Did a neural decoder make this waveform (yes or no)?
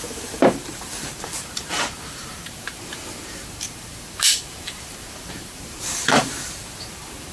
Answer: yes